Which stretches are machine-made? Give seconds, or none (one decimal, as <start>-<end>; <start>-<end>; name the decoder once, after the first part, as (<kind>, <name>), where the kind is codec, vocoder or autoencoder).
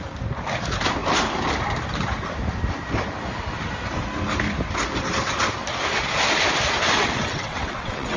6.8-8.2 (vocoder, WaveNeXt)